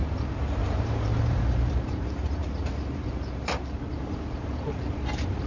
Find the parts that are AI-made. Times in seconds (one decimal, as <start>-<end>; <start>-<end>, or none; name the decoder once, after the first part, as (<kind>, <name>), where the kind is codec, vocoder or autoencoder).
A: 0.0-5.5 (vocoder, BigVGAN v2)